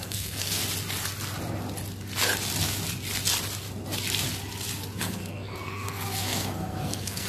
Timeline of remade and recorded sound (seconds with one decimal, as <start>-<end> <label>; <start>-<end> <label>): 0.0-0.6 remade; 0.6-5.0 recorded; 5.0-7.3 remade